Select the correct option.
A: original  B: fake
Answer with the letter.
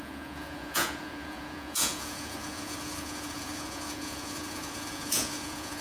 B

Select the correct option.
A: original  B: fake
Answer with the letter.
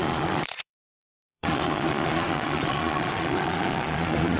B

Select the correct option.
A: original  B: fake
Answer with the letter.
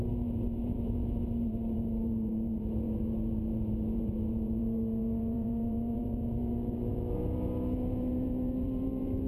B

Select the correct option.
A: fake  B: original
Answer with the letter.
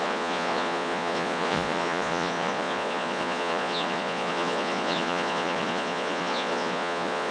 A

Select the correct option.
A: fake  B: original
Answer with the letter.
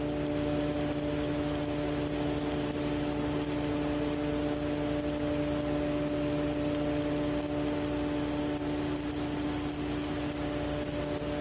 B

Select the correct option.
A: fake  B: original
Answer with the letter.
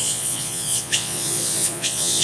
A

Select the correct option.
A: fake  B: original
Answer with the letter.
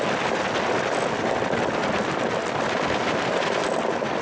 B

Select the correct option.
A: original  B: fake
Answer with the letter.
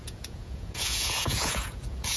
B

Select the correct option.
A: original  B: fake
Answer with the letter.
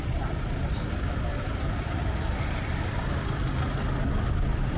A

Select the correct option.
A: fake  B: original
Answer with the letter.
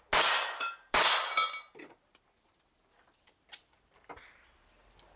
B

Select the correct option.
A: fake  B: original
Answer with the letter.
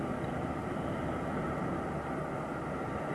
B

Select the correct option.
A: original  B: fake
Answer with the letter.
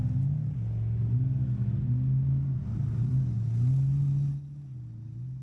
A